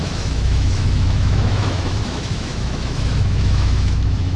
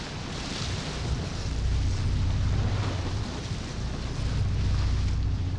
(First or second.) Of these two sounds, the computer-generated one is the first